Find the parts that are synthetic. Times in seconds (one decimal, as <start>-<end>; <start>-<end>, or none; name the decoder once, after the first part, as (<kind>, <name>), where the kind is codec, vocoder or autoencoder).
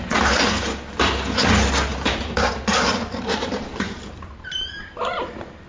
1.9-5.3 (vocoder, BigVGAN v2)